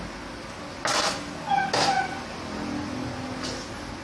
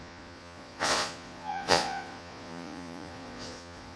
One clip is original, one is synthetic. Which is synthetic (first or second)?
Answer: second